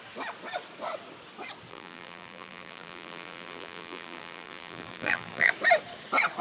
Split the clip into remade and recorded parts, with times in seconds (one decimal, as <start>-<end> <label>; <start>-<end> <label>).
0.0-1.7 recorded; 1.7-5.5 remade; 5.5-6.4 recorded